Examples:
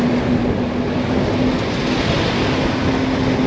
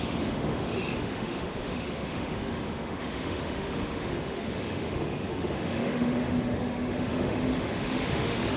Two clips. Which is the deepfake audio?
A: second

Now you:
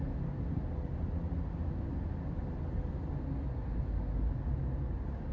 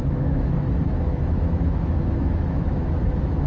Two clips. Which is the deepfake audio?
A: second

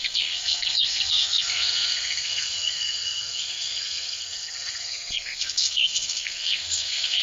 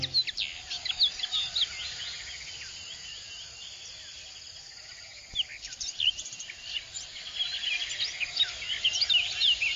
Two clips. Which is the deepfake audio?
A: first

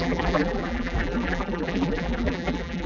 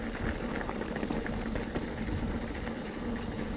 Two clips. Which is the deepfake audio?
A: first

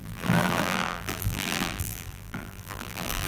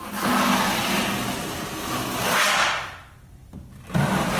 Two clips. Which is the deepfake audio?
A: first